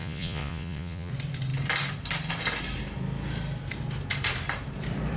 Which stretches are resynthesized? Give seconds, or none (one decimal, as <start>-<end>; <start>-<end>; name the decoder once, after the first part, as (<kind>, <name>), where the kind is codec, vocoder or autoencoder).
0.0-1.1 (vocoder, Vocos)